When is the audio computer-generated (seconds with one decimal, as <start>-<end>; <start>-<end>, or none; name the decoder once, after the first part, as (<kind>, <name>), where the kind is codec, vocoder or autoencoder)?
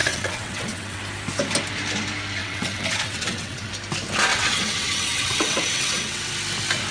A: 0.0-1.0 (vocoder, WaveNeXt); 2.4-3.7; 4.3-6.3